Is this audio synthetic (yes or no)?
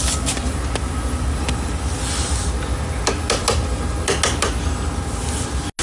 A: no